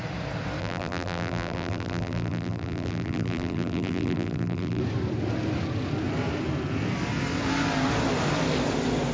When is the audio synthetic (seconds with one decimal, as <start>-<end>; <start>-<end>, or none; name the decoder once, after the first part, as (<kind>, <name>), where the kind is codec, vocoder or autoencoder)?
0.6-4.8 (vocoder, BigVGAN v2)